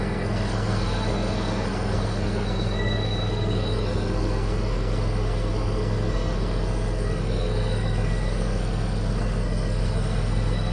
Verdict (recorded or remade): remade